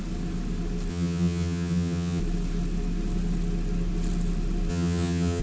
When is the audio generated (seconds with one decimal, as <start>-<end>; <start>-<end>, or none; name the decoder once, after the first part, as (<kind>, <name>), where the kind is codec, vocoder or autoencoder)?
0.9-2.2 (vocoder, HiFi-GAN); 4.7-5.4